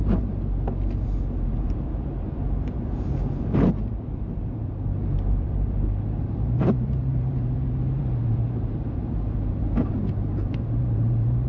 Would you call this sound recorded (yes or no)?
no